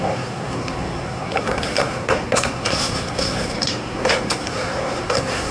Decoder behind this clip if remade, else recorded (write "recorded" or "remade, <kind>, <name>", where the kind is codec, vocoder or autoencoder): remade, codec, SNAC